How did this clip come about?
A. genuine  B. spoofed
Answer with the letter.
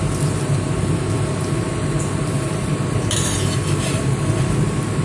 A